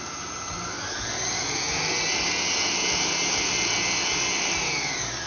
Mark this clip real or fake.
real